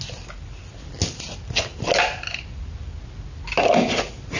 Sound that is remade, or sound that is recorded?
recorded